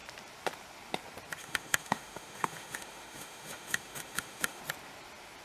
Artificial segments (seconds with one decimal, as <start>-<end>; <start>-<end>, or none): 1.4-4.6